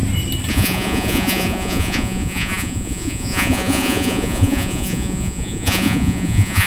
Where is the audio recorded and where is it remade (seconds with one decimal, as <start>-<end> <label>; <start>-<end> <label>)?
0.0-0.5 recorded; 0.5-6.7 remade